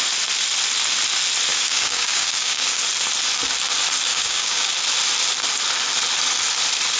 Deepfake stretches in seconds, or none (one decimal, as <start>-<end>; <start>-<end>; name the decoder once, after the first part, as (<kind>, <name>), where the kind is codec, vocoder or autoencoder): 1.5-2.8 (codec, DAC); 4.1-4.7